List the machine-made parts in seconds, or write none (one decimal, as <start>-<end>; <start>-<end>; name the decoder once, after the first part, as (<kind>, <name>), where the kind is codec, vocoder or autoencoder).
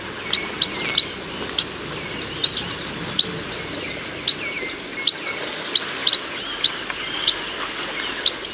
none